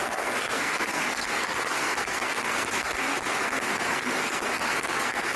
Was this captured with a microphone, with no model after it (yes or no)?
no